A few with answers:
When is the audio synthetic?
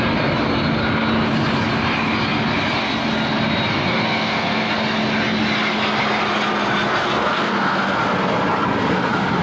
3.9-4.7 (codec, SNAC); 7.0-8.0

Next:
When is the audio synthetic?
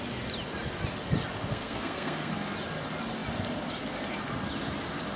1.5-2.3 (codec, SNAC)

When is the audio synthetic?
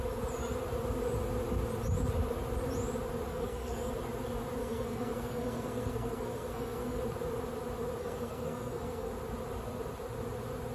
3.3-3.9 (codec, SNAC); 4.6-7.0; 8.0-9.1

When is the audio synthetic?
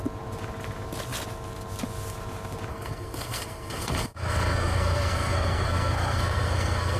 2.7-7.0 (codec, SNAC)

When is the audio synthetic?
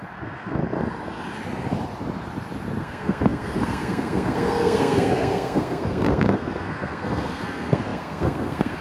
0.0-0.6 (codec, SNAC); 2.8-8.8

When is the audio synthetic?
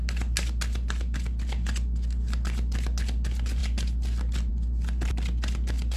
none